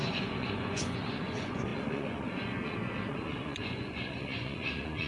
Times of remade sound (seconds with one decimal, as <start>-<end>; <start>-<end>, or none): 0.0-5.1